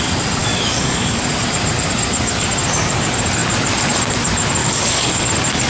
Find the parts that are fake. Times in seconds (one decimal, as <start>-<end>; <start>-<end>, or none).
0.4-1.2; 4.6-5.3